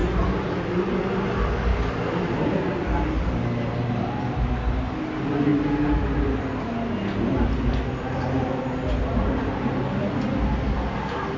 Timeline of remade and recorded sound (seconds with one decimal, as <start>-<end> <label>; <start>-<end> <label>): 0.0-1.7 recorded; 1.7-2.6 remade; 2.6-11.4 recorded